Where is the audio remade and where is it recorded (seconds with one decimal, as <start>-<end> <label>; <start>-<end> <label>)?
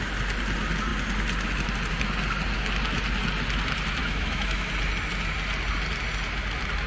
0.0-4.0 recorded; 4.0-4.7 remade; 4.7-6.9 recorded